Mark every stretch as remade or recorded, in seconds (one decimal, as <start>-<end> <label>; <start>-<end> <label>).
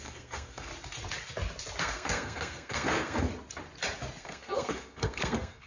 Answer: 0.0-0.7 remade; 0.7-1.8 recorded; 1.8-3.3 remade; 3.3-4.2 recorded; 4.2-5.7 remade